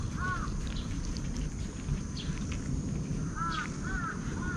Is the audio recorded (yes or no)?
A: yes